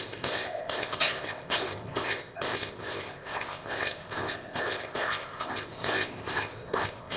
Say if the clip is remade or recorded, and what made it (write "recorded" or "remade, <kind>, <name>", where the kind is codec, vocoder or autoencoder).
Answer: remade, codec, ZipCodec